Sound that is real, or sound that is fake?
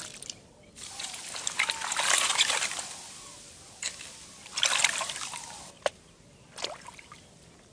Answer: real